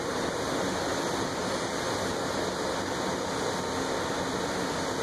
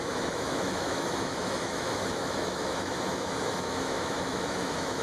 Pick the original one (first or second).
first